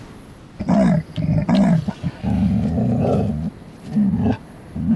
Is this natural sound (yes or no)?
yes